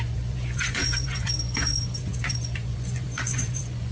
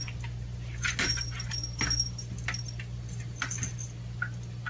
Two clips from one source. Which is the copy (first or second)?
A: first